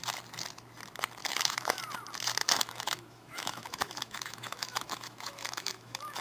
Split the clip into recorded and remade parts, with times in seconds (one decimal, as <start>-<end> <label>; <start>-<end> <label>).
0.0-1.2 recorded; 1.2-1.8 remade; 1.8-2.4 recorded; 2.4-6.2 remade